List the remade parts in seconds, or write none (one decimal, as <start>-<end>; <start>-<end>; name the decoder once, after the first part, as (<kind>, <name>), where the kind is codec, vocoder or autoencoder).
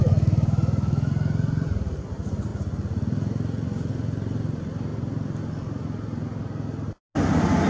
0.0-1.1 (autoencoder, DAC-VAE)